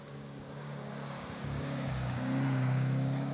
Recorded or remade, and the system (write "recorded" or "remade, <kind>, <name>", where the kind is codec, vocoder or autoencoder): remade, codec, DAC